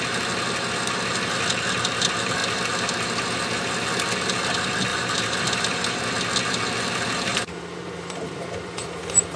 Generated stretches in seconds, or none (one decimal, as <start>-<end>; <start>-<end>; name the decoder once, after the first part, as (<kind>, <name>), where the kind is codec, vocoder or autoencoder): 4.9-5.6 (vocoder, BigVGAN v2); 7.3-9.0